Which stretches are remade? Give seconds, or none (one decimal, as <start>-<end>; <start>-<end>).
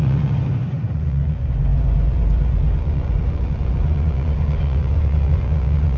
0.0-6.0